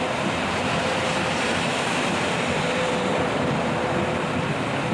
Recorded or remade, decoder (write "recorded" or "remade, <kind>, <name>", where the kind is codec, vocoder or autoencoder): remade, vocoder, BigVGAN v2